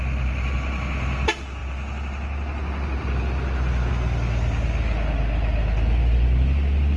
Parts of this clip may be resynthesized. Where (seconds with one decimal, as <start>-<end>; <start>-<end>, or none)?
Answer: none